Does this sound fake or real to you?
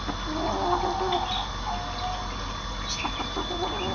real